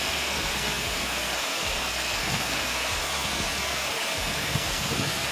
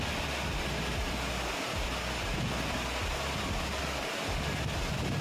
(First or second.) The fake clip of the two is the first